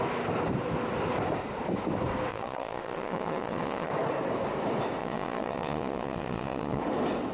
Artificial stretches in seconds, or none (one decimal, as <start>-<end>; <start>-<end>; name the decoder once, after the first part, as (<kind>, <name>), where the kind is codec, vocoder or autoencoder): 2.3-3.9 (vocoder, Vocos); 5.0-6.8